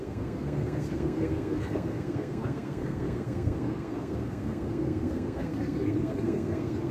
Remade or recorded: remade